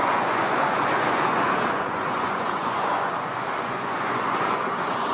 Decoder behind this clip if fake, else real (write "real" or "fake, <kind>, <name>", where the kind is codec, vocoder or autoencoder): fake, vocoder, Vocos